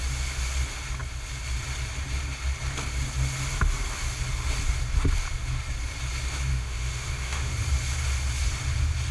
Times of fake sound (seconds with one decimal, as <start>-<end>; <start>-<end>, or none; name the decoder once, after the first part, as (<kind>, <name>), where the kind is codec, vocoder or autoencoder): 6.5-7.5 (autoencoder, DAC-VAE)